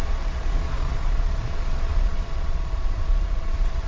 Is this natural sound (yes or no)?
no